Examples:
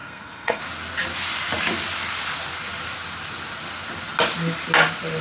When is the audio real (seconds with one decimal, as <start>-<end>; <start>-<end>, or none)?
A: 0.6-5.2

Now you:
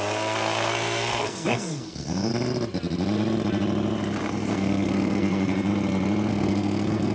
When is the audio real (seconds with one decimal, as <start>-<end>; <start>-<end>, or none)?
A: 2.3-4.5; 5.7-6.3

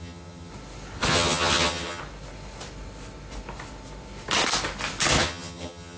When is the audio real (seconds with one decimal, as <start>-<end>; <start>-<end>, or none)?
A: 0.5-1.1; 2.0-5.2